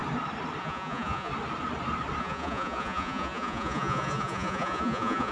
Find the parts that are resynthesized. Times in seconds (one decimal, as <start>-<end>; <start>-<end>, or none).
0.6-1.3; 2.2-5.3